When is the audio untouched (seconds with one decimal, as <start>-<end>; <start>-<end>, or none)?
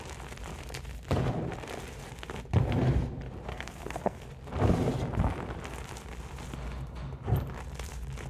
0.0-3.5; 4.3-8.3